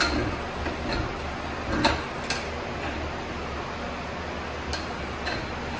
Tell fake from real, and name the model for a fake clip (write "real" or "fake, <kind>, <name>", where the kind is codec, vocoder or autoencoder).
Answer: real